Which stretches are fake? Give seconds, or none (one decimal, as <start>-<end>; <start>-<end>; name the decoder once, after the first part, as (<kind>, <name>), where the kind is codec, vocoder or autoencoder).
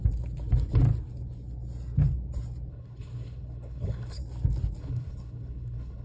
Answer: 2.7-4.2 (codec, HILCodec); 4.8-6.0